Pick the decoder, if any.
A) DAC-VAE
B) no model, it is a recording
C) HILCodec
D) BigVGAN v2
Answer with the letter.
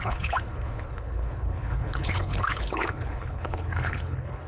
C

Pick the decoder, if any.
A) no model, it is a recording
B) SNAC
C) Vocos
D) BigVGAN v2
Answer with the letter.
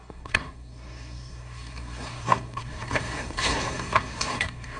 B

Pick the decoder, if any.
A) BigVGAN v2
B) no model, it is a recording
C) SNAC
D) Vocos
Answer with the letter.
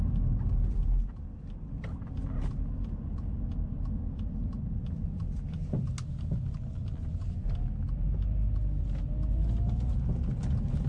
B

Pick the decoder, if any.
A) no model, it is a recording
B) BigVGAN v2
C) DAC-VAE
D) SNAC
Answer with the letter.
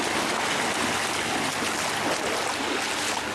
A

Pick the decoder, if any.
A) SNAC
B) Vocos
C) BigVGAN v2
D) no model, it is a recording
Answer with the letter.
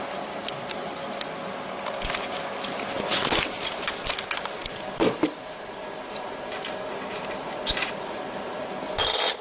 D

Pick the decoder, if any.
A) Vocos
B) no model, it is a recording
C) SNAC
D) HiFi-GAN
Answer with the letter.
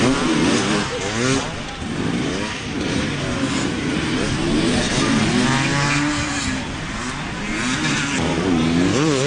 B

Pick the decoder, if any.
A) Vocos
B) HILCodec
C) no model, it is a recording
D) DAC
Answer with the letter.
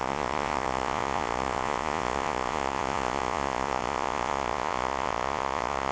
A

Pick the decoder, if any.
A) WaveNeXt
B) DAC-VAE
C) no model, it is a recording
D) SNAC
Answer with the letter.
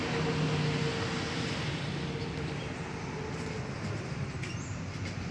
C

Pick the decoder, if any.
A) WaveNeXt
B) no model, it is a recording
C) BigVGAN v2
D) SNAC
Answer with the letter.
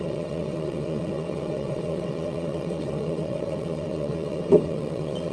A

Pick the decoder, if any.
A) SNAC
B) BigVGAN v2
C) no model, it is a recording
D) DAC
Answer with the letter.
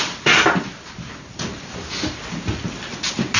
C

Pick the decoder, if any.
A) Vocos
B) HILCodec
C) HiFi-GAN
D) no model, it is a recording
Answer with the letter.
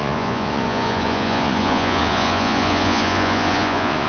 A